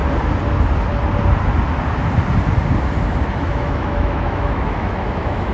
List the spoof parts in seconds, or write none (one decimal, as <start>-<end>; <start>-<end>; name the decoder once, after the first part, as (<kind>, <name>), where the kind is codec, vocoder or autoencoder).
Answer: 3.3-5.5 (autoencoder, DAC-VAE)